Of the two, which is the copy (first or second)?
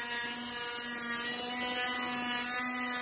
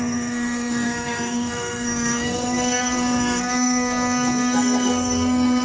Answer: second